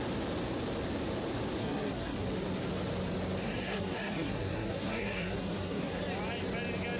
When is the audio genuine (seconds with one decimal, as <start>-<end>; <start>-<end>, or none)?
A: 0.0-1.6; 2.3-3.4; 6.0-7.0